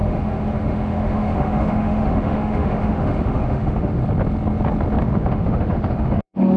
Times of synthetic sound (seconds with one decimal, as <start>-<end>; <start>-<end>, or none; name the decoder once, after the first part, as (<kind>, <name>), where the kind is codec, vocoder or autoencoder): 0.0-4.0 (autoencoder, DAC-VAE); 5.0-6.6